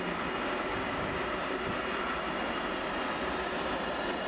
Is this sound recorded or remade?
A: recorded